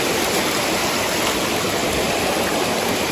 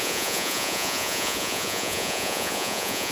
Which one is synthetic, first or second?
second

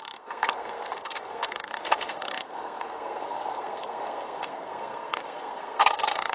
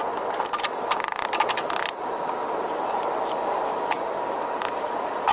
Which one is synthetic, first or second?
first